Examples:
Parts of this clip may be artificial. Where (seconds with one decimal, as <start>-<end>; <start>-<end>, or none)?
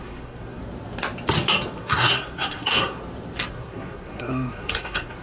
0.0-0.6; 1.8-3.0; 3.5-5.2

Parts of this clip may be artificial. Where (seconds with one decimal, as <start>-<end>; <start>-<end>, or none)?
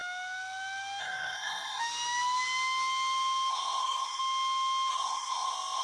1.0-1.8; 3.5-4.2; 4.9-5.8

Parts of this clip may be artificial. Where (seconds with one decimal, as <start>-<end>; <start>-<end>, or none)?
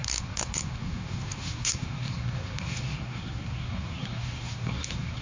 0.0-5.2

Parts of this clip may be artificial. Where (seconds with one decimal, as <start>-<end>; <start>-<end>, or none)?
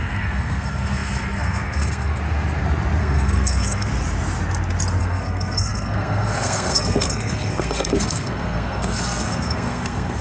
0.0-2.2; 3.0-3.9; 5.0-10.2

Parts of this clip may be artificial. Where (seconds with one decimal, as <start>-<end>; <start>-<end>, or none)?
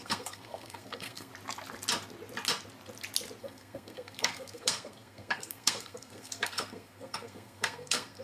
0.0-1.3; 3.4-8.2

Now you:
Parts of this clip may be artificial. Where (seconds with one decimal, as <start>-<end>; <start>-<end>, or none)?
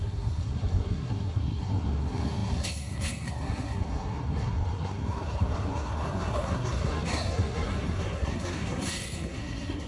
0.0-9.9